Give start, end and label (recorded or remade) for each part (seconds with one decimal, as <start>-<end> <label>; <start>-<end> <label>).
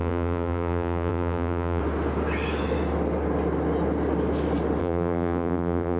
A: 0.0-1.8 remade; 1.8-4.8 recorded; 4.8-6.0 remade